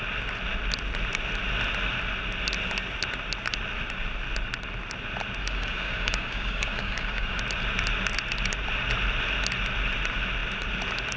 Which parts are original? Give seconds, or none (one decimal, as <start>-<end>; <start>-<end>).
0.0-5.4; 7.4-11.2